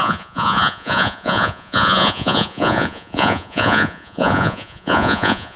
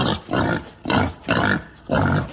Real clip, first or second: second